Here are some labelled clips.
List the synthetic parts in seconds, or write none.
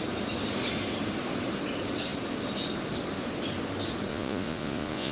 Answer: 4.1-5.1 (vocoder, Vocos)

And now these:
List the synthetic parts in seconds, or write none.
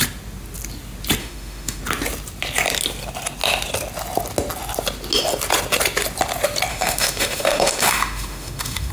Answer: 1.2-1.8 (autoencoder, DAC-VAE); 6.7-8.9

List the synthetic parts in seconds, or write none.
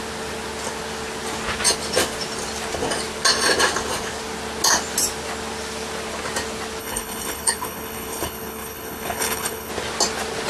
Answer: 6.8-9.7 (codec, HILCodec)